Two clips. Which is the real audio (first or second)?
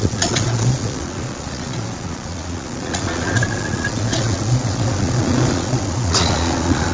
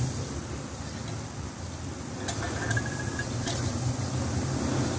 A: second